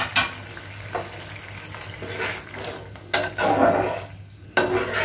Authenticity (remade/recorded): recorded